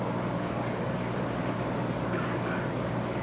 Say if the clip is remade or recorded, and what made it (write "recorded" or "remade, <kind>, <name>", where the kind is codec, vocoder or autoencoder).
remade, codec, DAC